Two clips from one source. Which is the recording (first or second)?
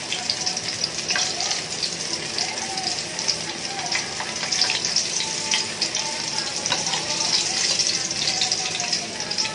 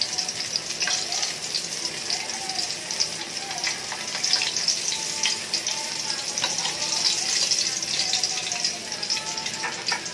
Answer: second